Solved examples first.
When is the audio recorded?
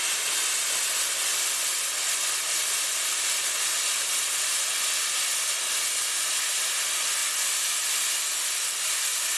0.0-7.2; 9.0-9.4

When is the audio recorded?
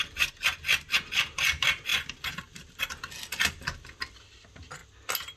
0.0-1.9; 2.8-5.4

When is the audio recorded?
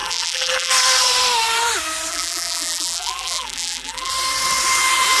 0.7-2.1; 4.1-5.2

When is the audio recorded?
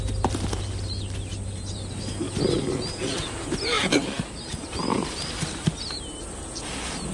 0.0-1.3; 2.0-3.9; 6.2-7.1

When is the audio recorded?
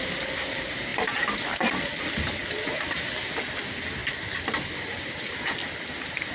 0.0-0.9; 2.0-4.0; 4.7-6.3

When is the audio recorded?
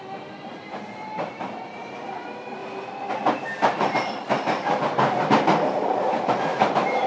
2.6-3.2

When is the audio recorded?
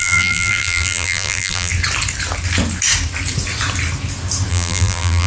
1.7-4.5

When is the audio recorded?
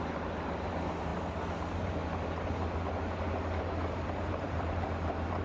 1.1-1.6; 2.0-3.6